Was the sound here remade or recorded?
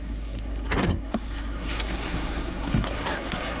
remade